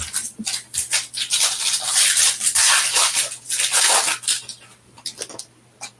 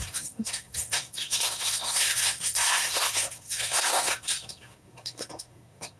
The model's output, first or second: second